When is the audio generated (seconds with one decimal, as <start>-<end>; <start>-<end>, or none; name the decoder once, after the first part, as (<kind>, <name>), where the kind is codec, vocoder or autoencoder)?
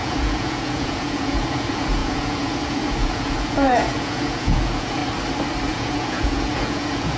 0.0-5.0 (vocoder, Vocos); 5.7-7.2